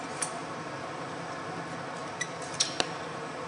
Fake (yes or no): no